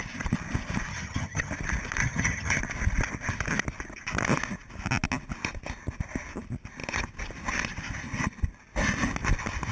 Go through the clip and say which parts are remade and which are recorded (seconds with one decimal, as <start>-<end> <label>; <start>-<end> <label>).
0.0-0.9 recorded; 0.9-1.5 remade; 1.5-2.0 recorded; 2.0-2.6 remade; 2.6-9.7 recorded